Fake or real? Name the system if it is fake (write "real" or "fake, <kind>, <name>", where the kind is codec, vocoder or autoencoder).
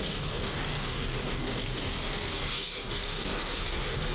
fake, codec, DAC